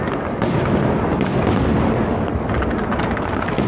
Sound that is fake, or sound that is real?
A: real